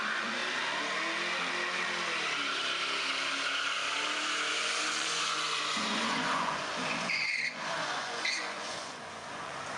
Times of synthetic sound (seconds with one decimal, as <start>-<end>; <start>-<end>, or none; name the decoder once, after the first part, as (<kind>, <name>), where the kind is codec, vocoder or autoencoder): 0.0-0.4 (vocoder, Vocos); 4.5-9.8